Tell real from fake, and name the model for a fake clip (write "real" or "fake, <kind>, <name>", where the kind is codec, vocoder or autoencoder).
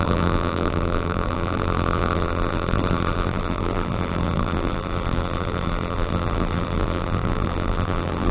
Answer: fake, vocoder, BigVGAN v2